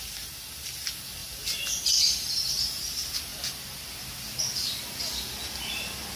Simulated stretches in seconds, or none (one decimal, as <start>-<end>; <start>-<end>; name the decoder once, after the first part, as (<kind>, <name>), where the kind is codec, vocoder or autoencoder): 1.2-1.8 (vocoder, BigVGAN v2); 3.3-3.9